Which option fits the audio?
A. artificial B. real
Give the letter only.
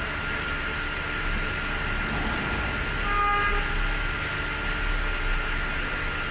B